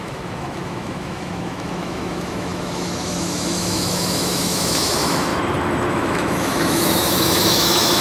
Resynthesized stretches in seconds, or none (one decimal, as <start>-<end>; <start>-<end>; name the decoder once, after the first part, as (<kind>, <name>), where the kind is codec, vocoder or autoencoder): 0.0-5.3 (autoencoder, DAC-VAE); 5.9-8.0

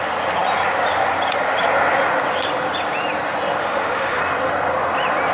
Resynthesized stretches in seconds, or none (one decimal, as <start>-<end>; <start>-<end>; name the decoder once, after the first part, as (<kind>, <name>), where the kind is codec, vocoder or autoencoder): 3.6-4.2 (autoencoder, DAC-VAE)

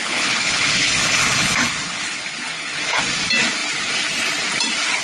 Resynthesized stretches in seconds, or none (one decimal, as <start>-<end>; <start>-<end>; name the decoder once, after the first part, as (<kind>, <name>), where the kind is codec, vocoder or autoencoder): 0.0-3.0 (codec, HILCodec)